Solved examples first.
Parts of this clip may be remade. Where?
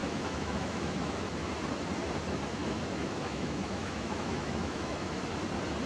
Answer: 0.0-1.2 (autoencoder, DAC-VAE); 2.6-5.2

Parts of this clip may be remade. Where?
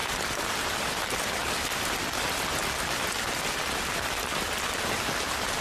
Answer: none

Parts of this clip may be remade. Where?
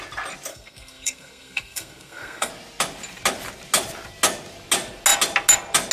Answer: 0.5-2.5 (codec, SNAC)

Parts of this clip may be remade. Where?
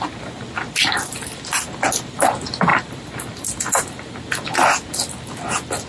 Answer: 2.7-4.1 (vocoder, BigVGAN v2)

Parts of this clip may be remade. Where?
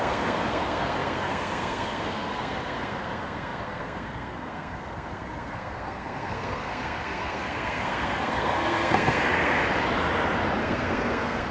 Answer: 0.0-9.6 (codec, SNAC); 10.6-11.5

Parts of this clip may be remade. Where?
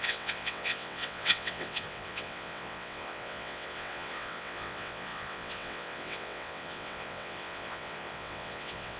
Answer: 0.0-9.0 (vocoder, WaveNeXt)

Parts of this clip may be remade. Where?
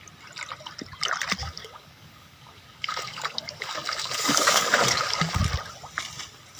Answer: 1.4-5.4 (codec, DAC)